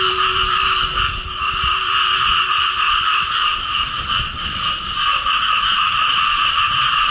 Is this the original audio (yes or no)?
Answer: no